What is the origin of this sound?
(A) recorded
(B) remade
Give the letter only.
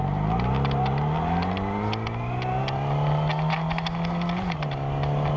A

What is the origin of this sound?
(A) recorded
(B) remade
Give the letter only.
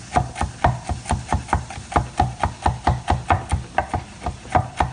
A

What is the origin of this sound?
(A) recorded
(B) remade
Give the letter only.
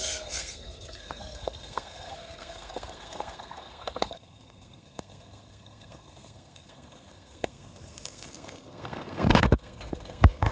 B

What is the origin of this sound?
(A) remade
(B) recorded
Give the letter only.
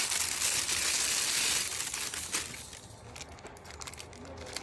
B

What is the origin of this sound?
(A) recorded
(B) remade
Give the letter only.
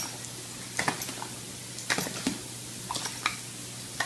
A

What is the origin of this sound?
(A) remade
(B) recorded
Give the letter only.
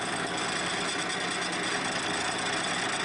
B